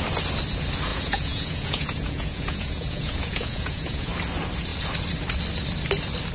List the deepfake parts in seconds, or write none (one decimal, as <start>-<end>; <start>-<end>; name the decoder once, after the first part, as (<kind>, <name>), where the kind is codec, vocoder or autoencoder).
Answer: 0.9-4.1 (vocoder, Vocos)